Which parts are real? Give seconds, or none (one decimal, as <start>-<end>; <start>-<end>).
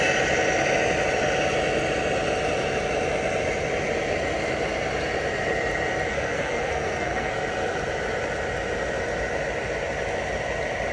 0.0-6.1; 7.3-10.9